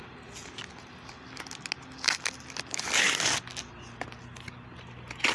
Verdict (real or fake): real